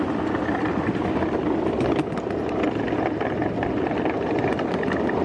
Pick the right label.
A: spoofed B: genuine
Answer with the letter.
B